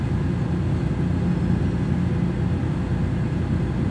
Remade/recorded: recorded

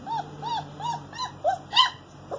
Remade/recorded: recorded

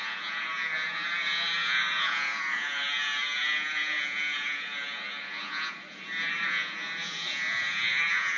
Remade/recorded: remade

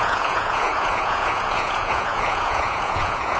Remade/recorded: remade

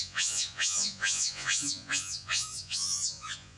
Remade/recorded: remade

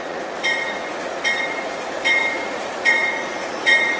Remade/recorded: remade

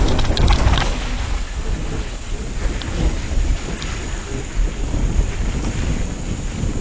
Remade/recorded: recorded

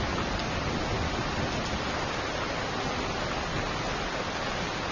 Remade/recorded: recorded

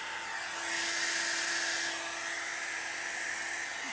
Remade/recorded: recorded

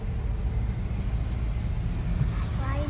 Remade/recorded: recorded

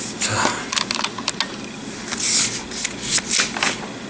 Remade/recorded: recorded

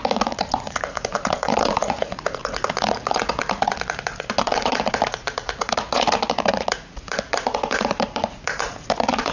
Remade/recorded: remade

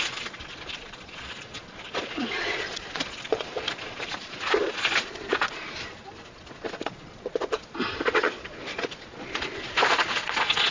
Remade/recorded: remade